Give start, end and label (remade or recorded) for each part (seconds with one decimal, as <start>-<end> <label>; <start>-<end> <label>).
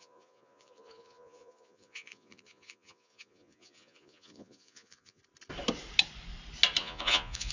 0.0-5.2 remade; 5.2-6.8 recorded; 6.8-7.5 remade